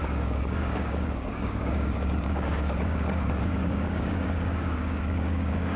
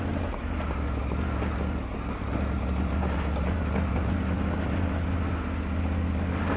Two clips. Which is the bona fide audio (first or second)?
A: second